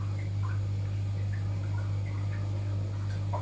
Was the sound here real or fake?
real